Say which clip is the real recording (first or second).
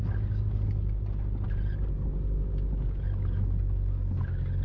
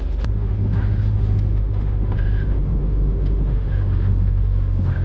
first